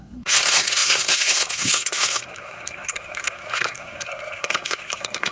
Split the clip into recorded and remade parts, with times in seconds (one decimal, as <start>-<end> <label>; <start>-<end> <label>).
0.0-5.3 remade